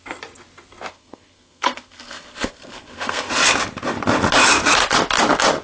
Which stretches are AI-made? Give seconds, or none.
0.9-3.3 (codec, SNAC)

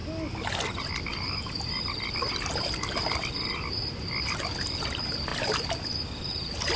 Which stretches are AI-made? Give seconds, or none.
0.0-0.5 (vocoder, BigVGAN v2); 1.1-2.5; 5.3-6.3

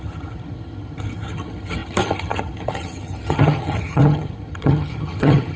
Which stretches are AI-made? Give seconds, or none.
0.0-5.6 (vocoder, HiFi-GAN)

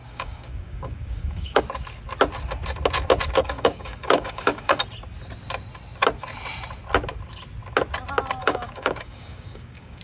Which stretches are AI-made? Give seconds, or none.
0.0-1.6 (codec, DAC); 3.4-4.8; 8.4-10.0